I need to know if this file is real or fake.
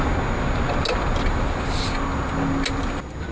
real